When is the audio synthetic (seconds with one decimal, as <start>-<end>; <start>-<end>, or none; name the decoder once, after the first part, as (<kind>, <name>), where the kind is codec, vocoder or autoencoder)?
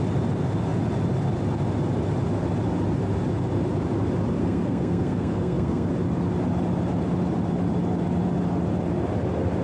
4.4-5.9 (codec, SNAC)